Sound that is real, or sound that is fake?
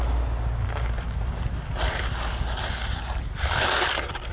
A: real